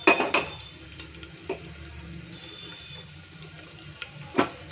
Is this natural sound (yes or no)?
yes